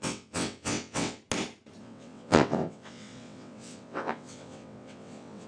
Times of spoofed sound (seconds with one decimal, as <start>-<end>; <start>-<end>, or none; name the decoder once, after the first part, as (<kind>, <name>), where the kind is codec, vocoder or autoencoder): 0.0-1.2 (vocoder, WaveNeXt); 1.8-5.5